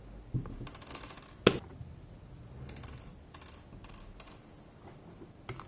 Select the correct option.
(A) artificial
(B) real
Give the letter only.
B